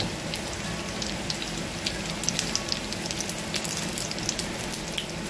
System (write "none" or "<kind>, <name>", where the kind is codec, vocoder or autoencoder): none